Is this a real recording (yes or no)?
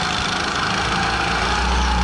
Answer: yes